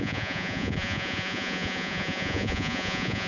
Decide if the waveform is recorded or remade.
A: remade